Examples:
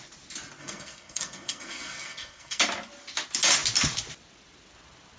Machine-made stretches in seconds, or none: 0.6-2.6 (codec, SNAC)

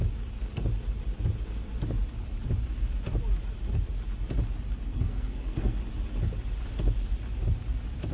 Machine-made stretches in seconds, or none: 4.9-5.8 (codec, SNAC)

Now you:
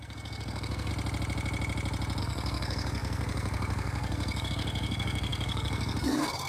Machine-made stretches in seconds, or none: 0.0-0.9 (codec, SNAC); 2.2-6.5

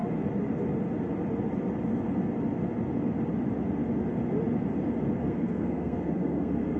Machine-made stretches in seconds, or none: 5.2-6.8 (codec, SNAC)

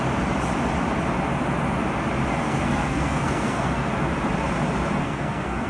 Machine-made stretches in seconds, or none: 2.4-3.9 (codec, SNAC); 5.0-5.7

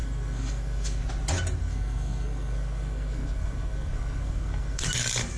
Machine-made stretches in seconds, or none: 0.0-1.0 (codec, SNAC); 1.6-4.8

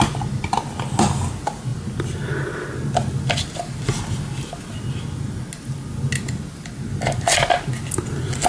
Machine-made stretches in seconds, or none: none

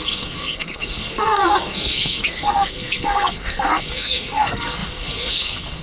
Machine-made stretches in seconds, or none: 0.0-5.8 (codec, SNAC)